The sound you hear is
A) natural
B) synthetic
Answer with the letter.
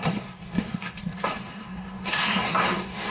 B